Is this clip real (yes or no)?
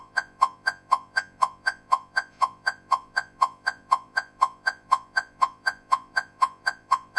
no